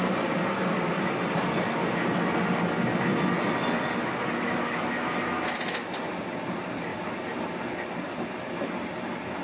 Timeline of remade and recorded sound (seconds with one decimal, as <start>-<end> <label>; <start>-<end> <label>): 0.0-9.4 recorded